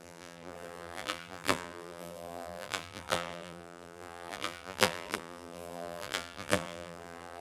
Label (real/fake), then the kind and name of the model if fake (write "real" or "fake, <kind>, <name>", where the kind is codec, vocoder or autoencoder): fake, vocoder, BigVGAN v2